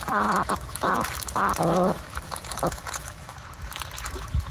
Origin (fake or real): fake